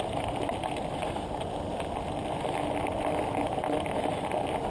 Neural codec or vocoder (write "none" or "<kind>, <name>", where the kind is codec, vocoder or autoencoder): none